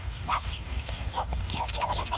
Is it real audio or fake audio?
fake